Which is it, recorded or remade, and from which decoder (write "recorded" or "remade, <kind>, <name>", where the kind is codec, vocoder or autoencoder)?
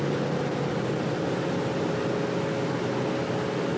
recorded